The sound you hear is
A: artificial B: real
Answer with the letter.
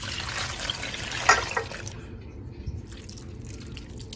B